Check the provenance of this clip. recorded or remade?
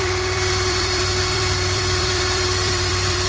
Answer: remade